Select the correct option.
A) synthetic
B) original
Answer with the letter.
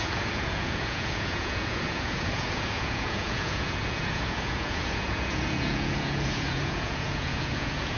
A